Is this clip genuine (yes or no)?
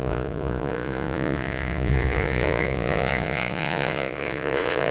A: no